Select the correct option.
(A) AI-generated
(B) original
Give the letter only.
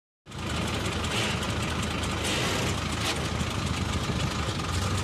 B